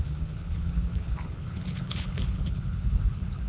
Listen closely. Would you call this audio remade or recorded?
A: remade